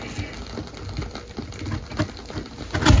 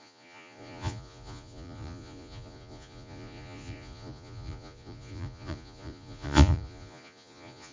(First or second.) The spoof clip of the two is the second